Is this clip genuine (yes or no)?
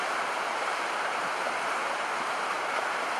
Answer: no